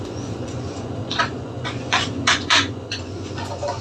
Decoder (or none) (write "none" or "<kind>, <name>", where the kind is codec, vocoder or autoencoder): vocoder, Vocos